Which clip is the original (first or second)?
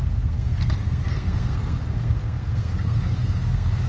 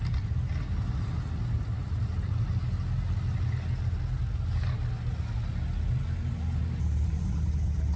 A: second